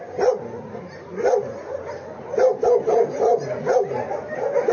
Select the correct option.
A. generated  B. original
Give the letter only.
B